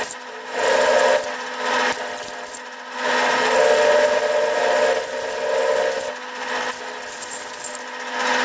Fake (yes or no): no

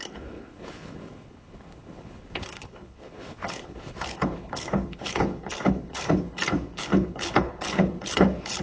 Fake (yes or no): yes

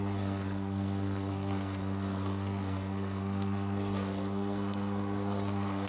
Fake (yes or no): yes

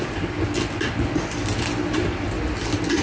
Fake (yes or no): no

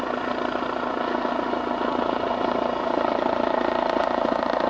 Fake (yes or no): no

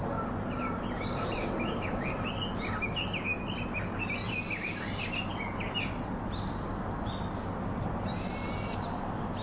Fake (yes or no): no